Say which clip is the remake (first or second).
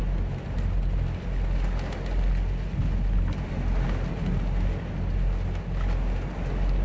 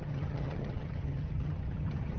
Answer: second